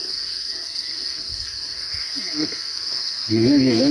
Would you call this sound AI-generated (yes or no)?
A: yes